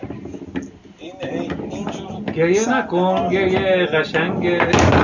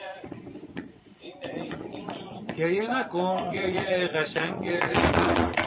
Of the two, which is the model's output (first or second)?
second